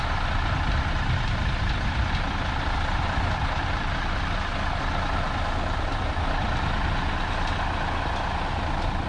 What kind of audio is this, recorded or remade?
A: recorded